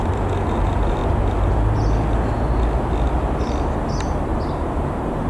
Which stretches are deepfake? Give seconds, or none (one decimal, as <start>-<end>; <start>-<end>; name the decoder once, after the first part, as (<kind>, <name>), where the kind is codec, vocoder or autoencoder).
0.0-1.0 (vocoder, BigVGAN v2); 3.9-5.3